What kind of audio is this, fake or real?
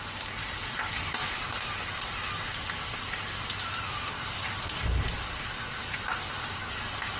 real